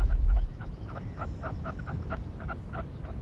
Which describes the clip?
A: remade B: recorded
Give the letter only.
A